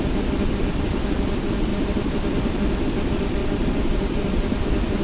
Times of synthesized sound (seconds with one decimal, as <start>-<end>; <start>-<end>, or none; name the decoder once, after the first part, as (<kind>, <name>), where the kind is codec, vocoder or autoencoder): 1.7-2.3 (vocoder, BigVGAN v2); 3.4-4.6